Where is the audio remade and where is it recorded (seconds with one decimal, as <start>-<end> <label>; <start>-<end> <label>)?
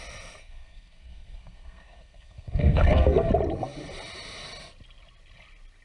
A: 0.0-0.4 recorded; 0.4-3.3 remade; 3.3-5.8 recorded